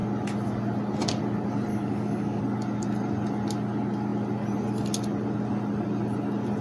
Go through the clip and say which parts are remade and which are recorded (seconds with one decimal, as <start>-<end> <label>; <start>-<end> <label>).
0.0-1.7 recorded; 1.7-2.4 remade; 2.4-6.6 recorded